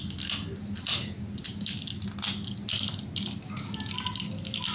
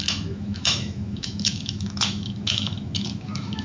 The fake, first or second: second